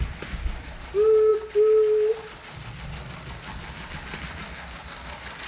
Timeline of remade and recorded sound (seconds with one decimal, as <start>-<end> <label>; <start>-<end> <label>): 0.0-5.5 recorded